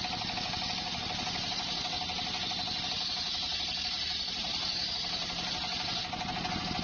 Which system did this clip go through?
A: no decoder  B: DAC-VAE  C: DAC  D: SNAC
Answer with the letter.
A